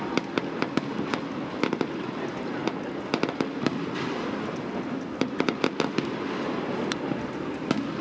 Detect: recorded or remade recorded